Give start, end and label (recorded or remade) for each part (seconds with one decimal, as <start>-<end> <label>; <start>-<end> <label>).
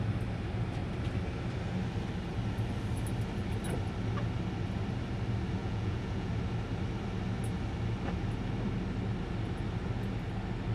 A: 0.0-5.6 recorded; 5.6-6.3 remade; 6.3-10.7 recorded